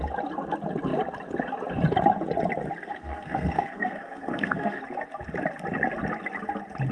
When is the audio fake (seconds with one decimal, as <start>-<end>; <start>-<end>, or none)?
2.9-4.8